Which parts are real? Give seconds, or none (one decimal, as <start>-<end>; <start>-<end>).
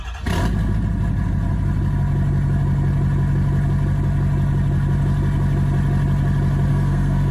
0.0-6.7